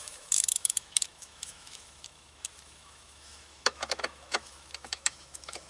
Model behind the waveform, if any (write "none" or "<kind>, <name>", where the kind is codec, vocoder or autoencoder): autoencoder, DAC-VAE